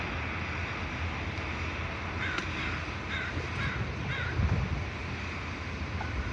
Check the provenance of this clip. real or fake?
real